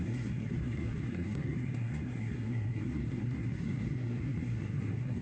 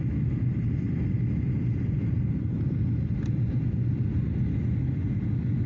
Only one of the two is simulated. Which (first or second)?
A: first